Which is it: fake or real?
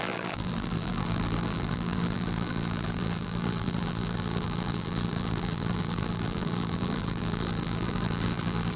fake